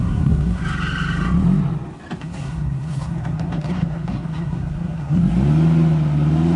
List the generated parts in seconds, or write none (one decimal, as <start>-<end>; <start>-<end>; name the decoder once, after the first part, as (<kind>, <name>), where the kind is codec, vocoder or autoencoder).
0.0-0.6 (codec, SNAC); 2.2-5.2